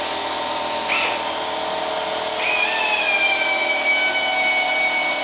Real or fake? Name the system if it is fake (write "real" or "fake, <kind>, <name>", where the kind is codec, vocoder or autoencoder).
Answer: real